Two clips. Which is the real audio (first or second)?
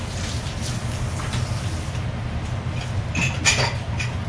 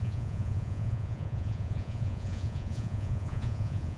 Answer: first